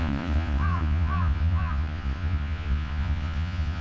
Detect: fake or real fake